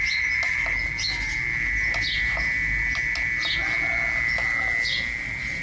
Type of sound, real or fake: real